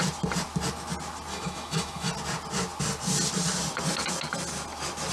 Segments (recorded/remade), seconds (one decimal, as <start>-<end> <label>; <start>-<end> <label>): 0.0-1.3 recorded; 1.3-2.1 remade; 2.1-5.1 recorded